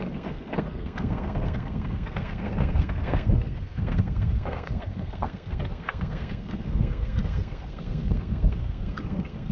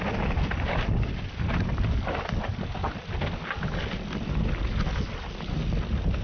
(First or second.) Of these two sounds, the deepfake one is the first